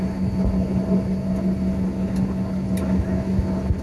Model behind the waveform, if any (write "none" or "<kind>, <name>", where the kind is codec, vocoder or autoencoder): none